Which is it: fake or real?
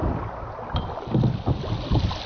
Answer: real